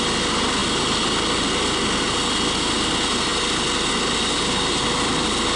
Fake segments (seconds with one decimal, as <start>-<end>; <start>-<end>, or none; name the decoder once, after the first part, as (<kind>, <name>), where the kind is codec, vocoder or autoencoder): none